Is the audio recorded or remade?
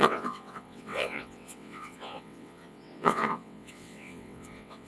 remade